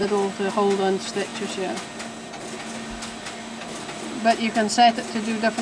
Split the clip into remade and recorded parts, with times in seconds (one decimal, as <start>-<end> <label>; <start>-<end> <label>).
0.0-5.6 recorded